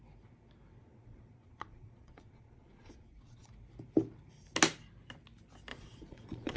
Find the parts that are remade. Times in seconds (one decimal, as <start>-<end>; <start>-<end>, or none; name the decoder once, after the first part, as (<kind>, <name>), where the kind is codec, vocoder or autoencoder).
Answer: 0.8-3.5 (vocoder, Vocos); 5.7-6.6